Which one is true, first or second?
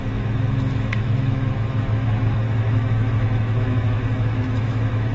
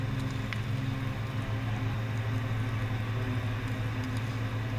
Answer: second